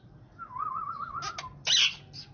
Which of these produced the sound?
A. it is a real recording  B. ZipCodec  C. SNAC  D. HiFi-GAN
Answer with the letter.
A